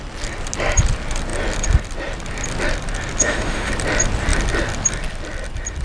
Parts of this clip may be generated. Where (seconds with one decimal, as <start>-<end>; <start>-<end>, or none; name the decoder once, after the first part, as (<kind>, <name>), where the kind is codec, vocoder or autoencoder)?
3.2-3.7 (autoencoder, DAC-VAE)